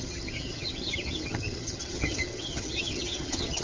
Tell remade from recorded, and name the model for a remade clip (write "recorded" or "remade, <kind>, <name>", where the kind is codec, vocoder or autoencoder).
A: remade, vocoder, HiFi-GAN